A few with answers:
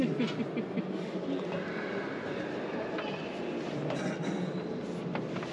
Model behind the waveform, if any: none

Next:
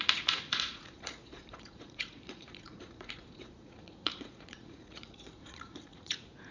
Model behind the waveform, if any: vocoder, Vocos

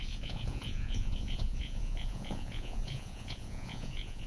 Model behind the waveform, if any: vocoder, Vocos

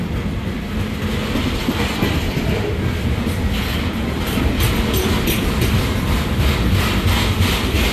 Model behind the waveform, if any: none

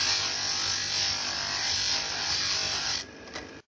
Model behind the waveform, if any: none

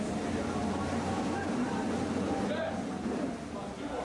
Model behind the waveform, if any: none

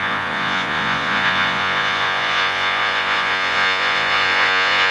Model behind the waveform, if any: vocoder, Vocos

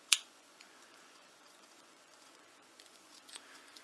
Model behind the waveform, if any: vocoder, Vocos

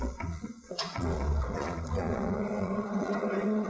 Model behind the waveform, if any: vocoder, Vocos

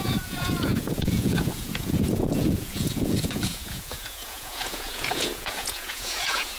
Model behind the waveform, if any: vocoder, Vocos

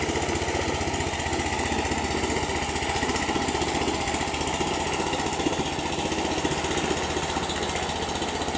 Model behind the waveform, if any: none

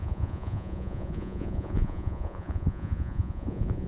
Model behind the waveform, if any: vocoder, Vocos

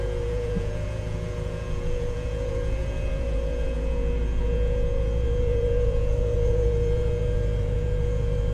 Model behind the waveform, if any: vocoder, Vocos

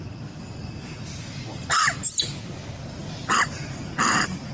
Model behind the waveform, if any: none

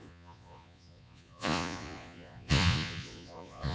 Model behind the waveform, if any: vocoder, Vocos